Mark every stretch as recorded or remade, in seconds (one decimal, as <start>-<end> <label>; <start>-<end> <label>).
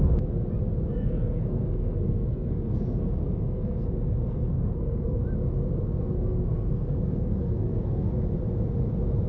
0.0-0.9 recorded; 0.9-5.2 remade; 5.2-6.0 recorded; 6.0-8.2 remade; 8.2-9.3 recorded